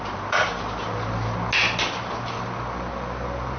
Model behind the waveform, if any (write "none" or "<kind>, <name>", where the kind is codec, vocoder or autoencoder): none